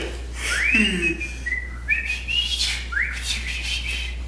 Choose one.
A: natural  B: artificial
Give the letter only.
A